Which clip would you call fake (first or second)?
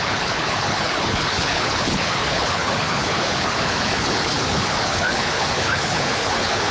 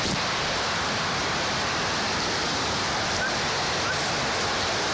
first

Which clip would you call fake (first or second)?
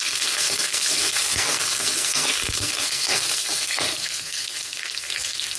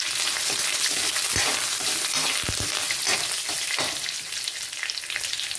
first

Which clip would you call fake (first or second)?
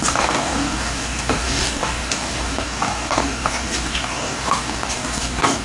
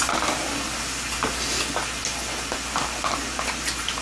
first